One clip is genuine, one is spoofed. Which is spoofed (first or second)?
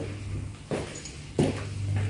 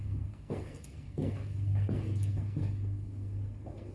second